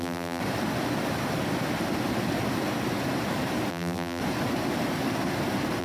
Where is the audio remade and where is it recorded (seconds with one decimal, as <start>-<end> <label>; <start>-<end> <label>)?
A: 0.0-0.4 remade; 0.4-3.7 recorded; 3.7-4.2 remade; 4.2-5.8 recorded